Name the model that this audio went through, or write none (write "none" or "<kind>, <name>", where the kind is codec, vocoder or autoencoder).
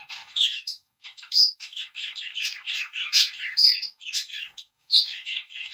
codec, DAC